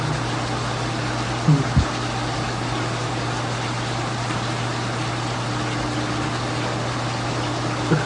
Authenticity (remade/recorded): recorded